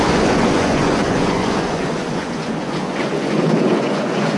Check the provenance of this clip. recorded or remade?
remade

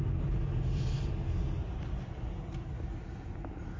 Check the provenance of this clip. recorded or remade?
recorded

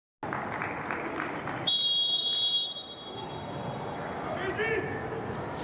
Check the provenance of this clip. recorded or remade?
recorded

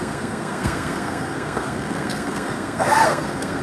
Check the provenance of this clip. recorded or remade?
remade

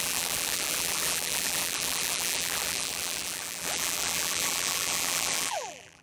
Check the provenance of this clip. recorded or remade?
remade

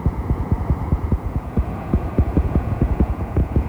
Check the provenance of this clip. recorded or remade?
remade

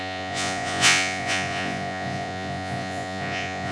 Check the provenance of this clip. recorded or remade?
remade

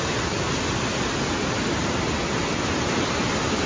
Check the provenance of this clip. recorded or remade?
recorded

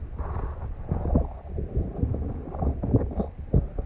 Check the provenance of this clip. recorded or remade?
recorded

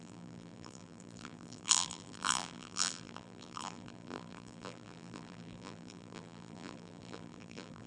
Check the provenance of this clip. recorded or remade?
remade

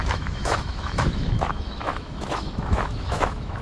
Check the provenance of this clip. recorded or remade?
remade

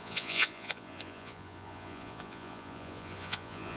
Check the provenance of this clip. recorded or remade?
remade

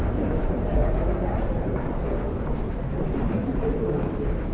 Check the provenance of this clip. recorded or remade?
remade